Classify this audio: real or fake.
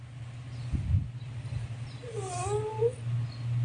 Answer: real